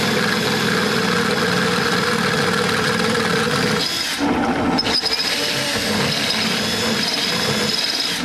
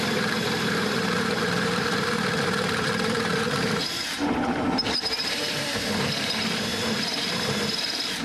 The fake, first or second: second